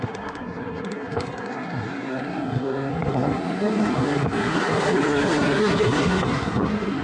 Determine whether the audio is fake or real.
fake